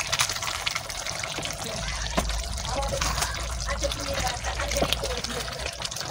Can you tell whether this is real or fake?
fake